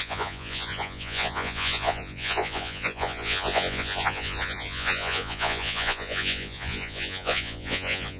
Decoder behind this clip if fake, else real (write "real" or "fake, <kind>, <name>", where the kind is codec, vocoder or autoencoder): fake, vocoder, Vocos